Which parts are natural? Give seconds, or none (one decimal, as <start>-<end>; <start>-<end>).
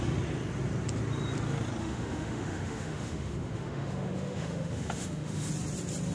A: 0.0-1.8; 5.5-6.1